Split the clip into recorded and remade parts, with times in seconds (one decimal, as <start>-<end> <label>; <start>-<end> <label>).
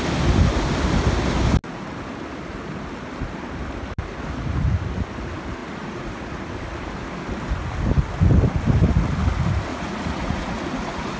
0.0-5.6 recorded; 5.6-6.4 remade; 6.4-9.7 recorded; 9.7-11.2 remade